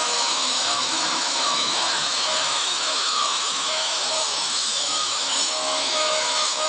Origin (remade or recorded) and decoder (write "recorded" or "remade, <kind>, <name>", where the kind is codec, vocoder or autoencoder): remade, autoencoder, DAC-VAE